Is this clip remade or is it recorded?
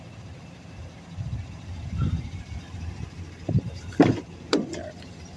remade